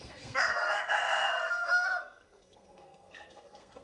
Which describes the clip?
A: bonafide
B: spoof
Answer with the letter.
B